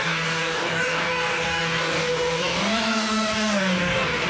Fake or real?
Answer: fake